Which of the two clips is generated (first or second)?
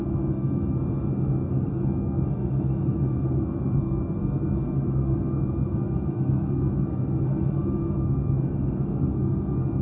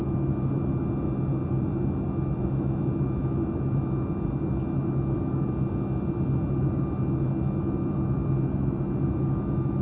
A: first